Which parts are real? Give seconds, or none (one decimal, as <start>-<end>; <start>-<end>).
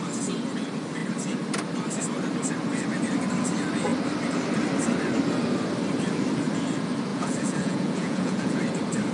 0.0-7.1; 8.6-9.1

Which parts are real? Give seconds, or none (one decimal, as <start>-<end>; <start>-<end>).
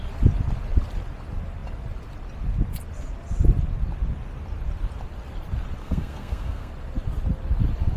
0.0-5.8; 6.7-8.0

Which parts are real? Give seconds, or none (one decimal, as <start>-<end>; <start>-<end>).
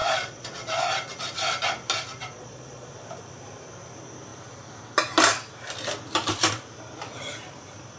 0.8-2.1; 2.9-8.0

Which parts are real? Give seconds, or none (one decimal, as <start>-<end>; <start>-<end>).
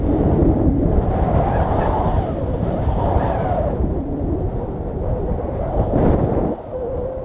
0.0-0.4; 4.1-7.2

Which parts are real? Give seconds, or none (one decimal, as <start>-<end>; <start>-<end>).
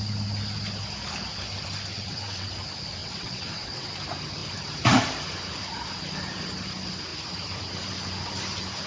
0.0-1.9; 2.5-3.0; 3.9-8.9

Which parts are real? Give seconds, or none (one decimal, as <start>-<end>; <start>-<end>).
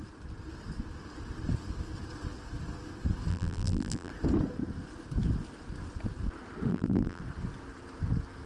0.0-3.3; 4.1-6.7; 7.2-8.5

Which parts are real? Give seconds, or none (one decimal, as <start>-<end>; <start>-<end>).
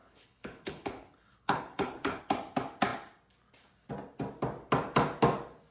2.2-5.7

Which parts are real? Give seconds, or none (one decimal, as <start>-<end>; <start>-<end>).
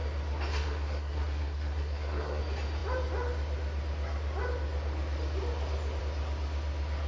0.0-0.5; 2.4-7.1